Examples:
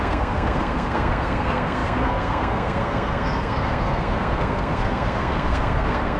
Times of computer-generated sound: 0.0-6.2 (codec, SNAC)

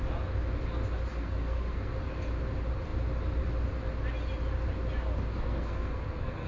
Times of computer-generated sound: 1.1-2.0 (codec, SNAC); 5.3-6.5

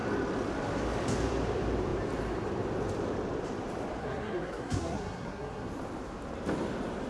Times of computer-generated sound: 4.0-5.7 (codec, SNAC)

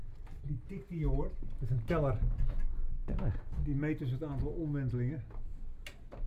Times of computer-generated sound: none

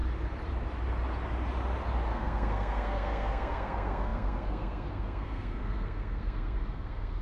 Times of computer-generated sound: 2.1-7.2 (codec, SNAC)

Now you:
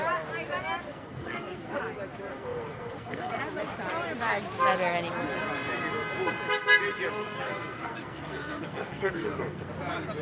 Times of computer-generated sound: 0.9-1.8 (codec, SNAC); 2.3-3.4; 7.2-9.7

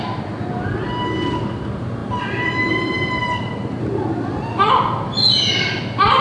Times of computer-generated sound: none